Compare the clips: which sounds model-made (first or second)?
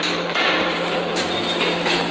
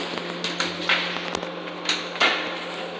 first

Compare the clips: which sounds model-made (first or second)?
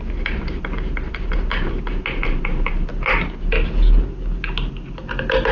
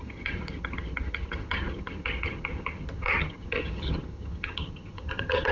second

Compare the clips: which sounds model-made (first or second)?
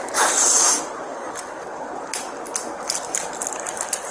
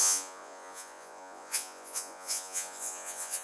second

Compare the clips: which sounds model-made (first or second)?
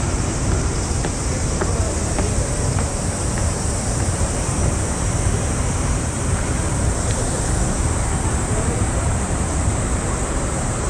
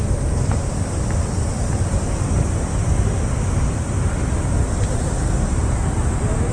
first